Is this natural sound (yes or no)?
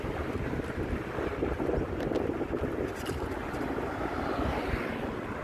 no